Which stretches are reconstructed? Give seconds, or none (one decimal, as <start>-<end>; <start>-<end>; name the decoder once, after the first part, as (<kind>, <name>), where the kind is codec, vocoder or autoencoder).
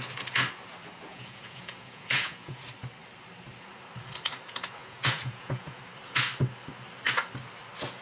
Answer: 1.1-2.6 (vocoder, Vocos); 4.8-5.8